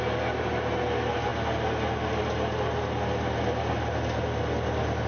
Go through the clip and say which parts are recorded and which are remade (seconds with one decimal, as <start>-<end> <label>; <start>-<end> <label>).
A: 0.0-5.1 recorded